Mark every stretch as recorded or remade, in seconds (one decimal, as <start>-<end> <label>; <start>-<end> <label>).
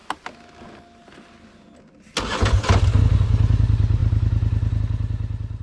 0.0-5.6 recorded